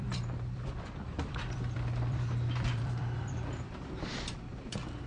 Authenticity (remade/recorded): remade